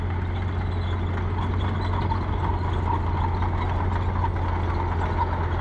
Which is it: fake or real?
real